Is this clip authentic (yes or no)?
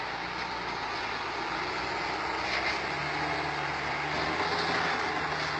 yes